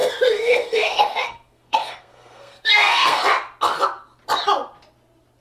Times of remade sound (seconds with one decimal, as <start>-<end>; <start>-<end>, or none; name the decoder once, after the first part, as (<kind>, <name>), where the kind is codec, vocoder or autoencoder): 0.0-3.2 (codec, SNAC)